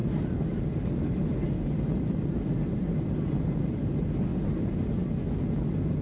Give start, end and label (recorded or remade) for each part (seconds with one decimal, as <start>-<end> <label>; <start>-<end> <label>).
0.0-6.0 recorded